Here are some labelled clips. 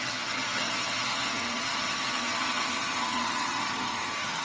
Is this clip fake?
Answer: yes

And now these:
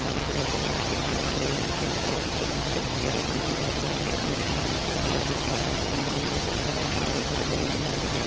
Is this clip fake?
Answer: yes